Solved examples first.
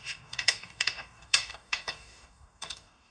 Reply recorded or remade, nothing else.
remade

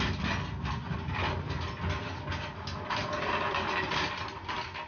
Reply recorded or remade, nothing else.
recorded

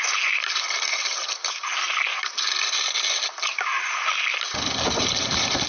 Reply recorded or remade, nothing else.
recorded